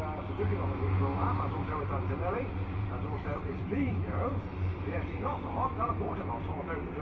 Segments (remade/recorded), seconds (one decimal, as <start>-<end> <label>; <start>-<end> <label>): 0.0-1.2 recorded; 1.2-5.4 remade; 5.4-7.0 recorded